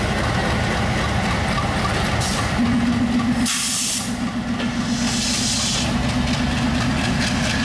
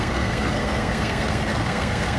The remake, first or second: second